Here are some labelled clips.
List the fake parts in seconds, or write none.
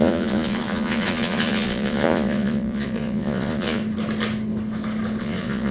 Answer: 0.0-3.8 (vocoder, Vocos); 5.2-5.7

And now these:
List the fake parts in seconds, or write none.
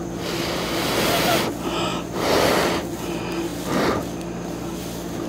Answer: 1.9-2.8 (vocoder, BigVGAN v2)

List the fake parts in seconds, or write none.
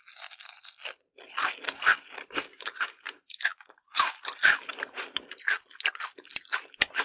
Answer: 1.9-5.4 (vocoder, BigVGAN v2)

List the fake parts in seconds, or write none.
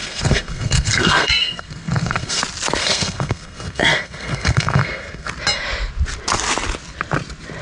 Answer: 0.0-2.4 (codec, SNAC); 2.8-5.3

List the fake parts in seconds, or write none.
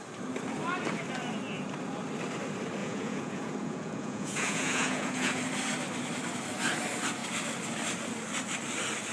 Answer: 2.8-5.4 (vocoder, Vocos)